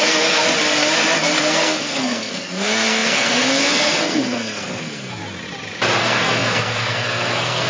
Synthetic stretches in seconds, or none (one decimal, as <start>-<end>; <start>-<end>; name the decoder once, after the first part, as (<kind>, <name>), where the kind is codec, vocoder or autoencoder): 0.0-0.4 (codec, SNAC); 1.4-5.2; 6.0-7.7